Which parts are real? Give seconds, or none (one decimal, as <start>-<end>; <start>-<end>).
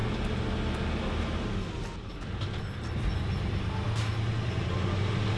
0.0-5.4